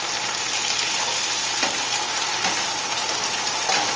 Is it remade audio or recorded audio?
recorded